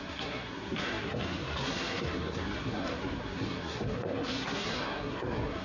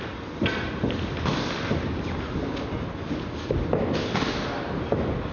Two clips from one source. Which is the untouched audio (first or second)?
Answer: second